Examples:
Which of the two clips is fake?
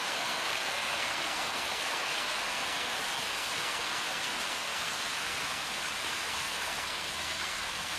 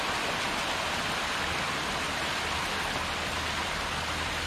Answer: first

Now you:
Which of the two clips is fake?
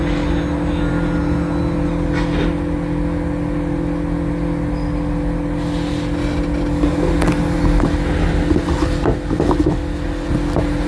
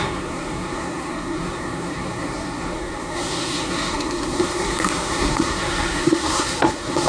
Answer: second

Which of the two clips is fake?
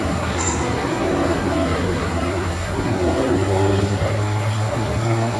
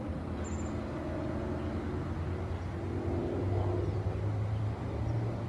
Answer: first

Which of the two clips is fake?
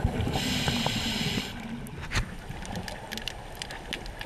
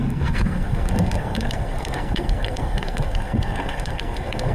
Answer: second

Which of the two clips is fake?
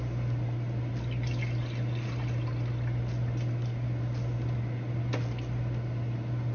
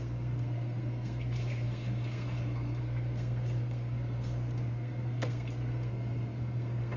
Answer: second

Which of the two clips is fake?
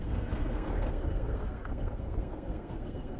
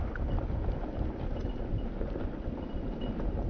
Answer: first